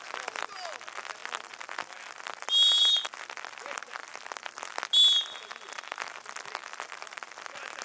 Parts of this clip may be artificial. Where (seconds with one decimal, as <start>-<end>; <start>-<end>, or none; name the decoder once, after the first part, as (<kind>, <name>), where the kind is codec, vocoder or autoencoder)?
none

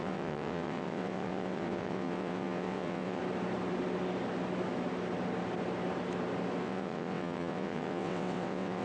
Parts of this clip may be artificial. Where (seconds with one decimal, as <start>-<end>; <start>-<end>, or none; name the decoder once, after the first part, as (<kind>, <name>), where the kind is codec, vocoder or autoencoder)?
0.0-3.2 (vocoder, WaveNeXt); 6.6-8.8

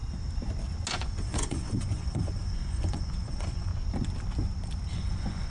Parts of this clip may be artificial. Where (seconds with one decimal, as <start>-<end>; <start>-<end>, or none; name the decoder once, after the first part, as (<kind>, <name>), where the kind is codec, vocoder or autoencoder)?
0.9-3.7 (vocoder, Vocos); 4.9-5.5

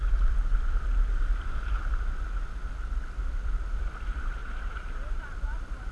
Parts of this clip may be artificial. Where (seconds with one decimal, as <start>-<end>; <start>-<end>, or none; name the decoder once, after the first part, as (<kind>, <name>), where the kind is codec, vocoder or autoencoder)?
4.4-5.2 (vocoder, BigVGAN v2)

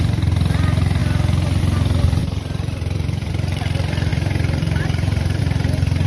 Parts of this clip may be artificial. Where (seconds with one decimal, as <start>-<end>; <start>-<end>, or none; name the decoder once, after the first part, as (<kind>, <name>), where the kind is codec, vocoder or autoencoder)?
2.2-3.3 (vocoder, BigVGAN v2); 4.1-5.4

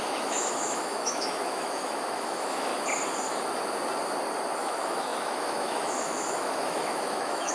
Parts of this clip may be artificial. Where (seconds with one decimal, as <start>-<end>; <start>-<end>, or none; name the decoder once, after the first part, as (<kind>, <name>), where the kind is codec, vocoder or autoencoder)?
0.0-2.7 (autoencoder, DAC-VAE); 4.6-7.5